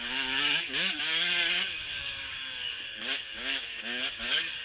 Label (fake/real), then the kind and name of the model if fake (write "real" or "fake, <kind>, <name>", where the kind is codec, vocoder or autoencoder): fake, codec, DAC